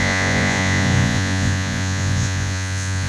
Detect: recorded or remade remade